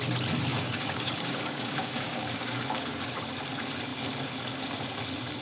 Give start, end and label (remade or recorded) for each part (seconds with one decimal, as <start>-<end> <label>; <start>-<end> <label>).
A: 0.0-0.5 recorded; 0.5-3.2 remade; 3.2-5.4 recorded